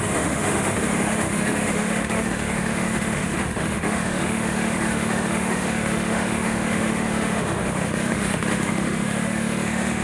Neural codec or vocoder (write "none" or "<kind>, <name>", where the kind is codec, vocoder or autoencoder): autoencoder, DAC-VAE